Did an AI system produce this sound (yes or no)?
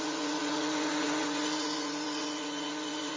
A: yes